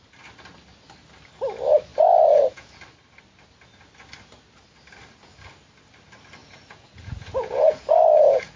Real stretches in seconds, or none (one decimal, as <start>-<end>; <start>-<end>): 0.0-1.9; 2.8-6.4